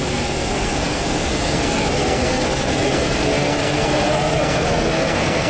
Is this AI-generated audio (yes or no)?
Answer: yes